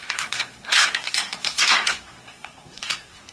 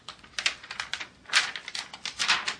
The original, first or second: second